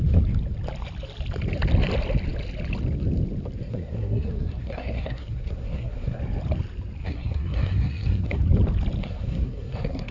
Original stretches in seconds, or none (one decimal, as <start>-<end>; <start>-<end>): 0.0-3.7; 6.2-7.0; 8.4-9.0

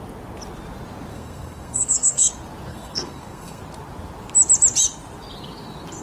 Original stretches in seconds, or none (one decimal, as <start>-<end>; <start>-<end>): 0.0-1.1; 2.3-2.7; 3.6-6.0

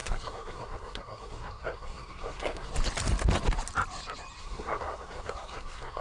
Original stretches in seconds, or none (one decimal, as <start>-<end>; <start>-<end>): 2.7-4.4

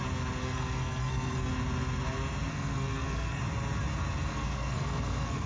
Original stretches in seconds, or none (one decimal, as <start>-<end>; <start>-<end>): 0.0-0.4; 1.5-2.5; 3.4-4.3

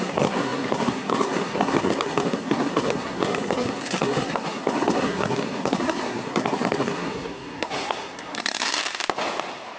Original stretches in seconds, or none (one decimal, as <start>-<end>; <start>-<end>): 8.8-9.8

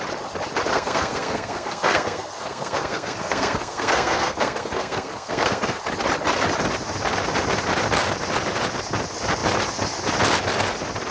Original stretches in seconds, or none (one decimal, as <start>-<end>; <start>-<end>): 0.0-0.7; 5.8-11.1

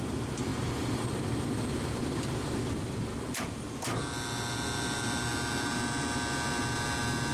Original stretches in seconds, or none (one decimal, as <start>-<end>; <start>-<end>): 0.0-7.3

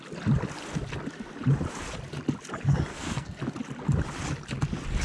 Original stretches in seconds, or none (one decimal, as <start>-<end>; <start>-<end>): 0.0-2.9; 3.4-5.0